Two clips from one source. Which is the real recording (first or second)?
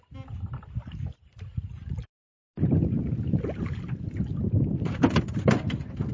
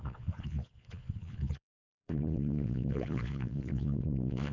first